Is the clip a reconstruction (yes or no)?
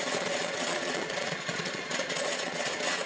yes